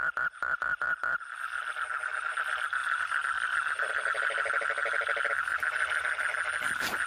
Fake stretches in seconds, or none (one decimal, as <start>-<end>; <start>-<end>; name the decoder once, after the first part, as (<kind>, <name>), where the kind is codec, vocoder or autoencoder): none